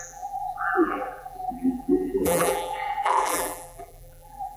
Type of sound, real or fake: fake